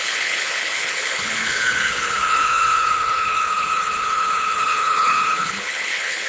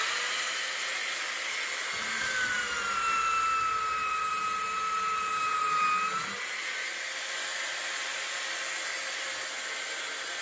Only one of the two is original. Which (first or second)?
second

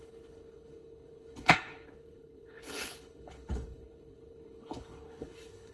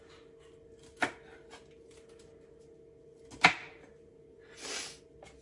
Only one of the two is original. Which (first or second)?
second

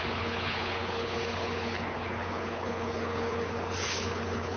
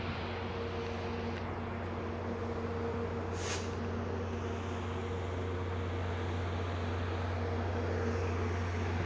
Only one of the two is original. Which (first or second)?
second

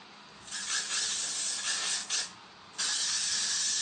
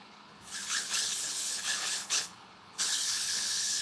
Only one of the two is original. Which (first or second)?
first